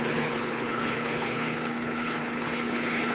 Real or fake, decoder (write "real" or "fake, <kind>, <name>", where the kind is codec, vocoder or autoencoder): fake, codec, HILCodec